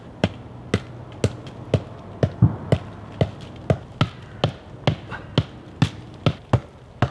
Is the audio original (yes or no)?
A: yes